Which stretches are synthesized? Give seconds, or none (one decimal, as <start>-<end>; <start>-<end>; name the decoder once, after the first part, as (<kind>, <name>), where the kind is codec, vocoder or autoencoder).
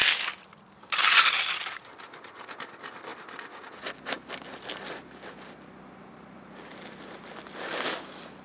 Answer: none